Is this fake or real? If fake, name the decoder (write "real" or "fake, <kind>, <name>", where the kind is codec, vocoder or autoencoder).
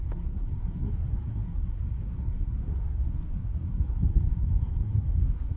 fake, codec, SNAC